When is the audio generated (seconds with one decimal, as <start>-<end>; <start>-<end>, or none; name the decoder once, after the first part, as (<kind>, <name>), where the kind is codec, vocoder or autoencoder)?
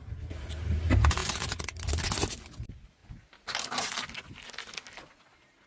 none